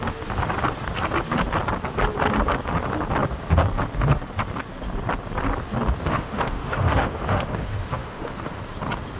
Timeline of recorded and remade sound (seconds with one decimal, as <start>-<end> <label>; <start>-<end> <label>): 0.0-6.1 recorded; 6.1-8.6 remade; 8.6-9.2 recorded